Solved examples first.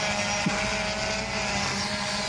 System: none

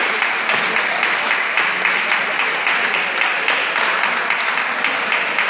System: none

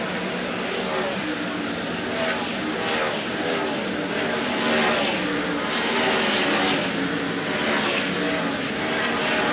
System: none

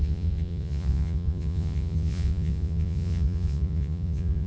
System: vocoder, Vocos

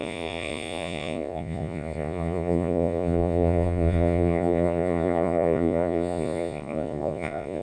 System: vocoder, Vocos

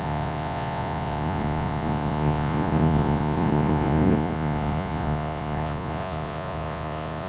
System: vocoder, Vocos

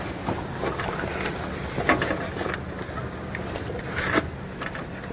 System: none